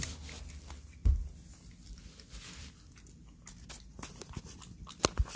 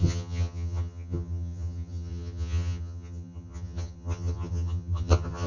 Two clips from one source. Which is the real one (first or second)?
first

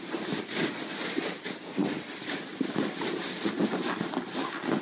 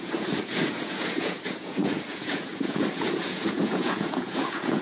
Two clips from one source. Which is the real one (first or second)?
first